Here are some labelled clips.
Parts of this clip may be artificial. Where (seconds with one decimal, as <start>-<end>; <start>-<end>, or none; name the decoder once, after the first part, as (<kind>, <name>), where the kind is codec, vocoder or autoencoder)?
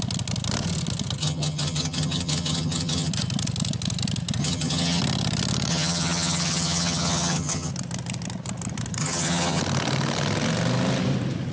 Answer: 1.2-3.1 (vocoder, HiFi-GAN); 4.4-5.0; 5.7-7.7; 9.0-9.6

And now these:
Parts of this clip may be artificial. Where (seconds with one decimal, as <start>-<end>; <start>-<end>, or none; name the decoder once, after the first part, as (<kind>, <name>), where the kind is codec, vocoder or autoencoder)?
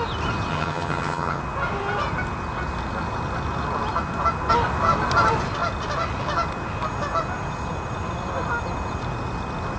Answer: 0.5-1.4 (vocoder, HiFi-GAN)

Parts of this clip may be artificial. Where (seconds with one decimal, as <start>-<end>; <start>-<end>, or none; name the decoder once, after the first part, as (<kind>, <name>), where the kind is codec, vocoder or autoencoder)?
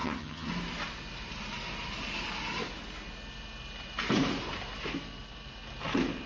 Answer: 0.0-0.5 (vocoder, HiFi-GAN)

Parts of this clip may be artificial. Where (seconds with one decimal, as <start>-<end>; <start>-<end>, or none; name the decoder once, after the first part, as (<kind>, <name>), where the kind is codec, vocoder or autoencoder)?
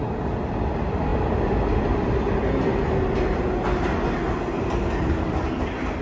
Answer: none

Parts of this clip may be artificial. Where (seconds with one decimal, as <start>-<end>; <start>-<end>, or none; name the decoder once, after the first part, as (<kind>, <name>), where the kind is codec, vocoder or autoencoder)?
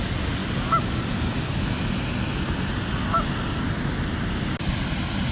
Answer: none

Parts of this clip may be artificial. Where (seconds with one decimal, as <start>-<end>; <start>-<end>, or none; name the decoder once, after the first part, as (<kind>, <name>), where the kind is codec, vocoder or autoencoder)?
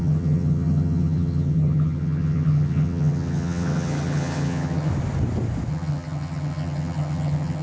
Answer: 0.0-4.9 (vocoder, HiFi-GAN); 5.7-7.6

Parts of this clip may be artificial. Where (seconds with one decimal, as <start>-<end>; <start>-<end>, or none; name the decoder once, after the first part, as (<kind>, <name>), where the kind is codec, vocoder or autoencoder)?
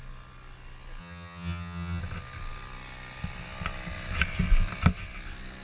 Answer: 1.0-2.0 (vocoder, HiFi-GAN)